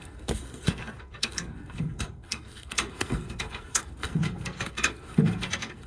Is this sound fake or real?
fake